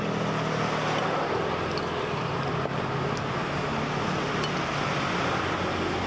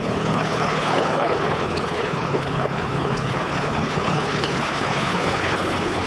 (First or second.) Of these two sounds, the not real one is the second